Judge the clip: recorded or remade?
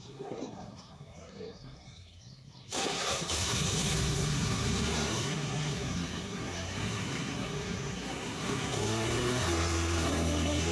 remade